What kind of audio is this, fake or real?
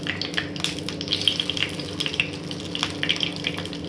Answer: real